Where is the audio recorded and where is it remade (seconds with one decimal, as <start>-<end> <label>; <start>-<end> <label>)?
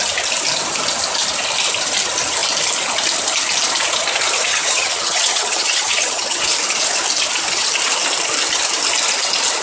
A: 0.0-4.5 recorded; 4.5-6.4 remade; 6.4-9.6 recorded